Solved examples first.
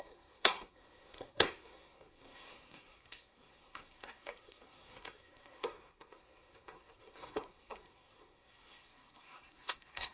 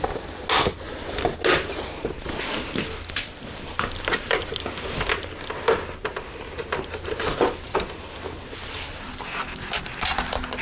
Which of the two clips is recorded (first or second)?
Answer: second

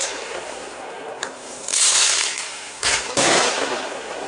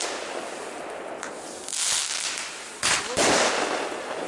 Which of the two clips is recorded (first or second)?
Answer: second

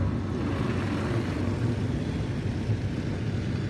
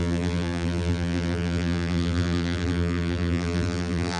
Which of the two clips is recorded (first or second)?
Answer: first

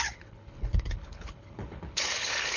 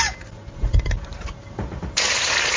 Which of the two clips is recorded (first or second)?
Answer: second